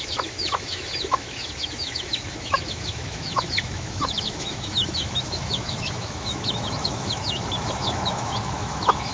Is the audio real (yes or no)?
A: no